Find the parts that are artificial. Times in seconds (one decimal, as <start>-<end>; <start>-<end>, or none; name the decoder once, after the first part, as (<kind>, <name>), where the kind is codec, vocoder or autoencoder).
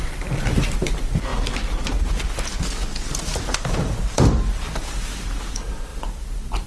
0.0-1.3 (vocoder, BigVGAN v2); 2.0-2.5; 3.2-6.7